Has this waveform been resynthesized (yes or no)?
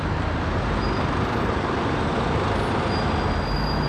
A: no